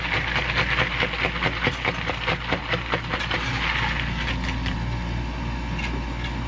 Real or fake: real